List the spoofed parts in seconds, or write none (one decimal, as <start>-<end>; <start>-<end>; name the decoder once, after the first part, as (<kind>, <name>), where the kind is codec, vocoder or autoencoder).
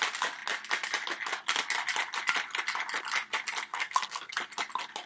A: 3.7-4.3 (codec, SNAC)